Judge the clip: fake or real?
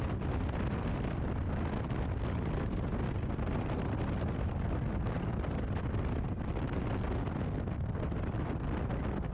real